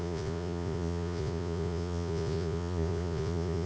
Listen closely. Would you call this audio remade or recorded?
remade